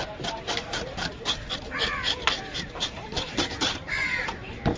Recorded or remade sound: remade